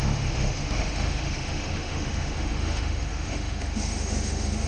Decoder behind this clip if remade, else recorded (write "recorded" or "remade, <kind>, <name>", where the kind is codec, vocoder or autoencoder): remade, autoencoder, DAC-VAE